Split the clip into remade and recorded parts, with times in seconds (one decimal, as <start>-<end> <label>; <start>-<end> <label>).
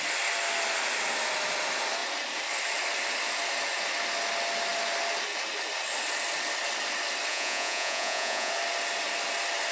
0.0-7.3 recorded; 7.3-8.5 remade; 8.5-9.7 recorded